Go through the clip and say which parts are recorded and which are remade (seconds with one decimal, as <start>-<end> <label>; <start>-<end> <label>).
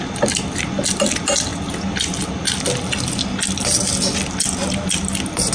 0.0-5.5 recorded